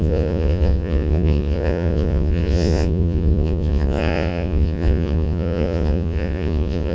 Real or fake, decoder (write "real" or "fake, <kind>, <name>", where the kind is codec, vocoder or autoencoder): fake, vocoder, Vocos